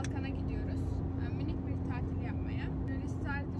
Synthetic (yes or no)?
no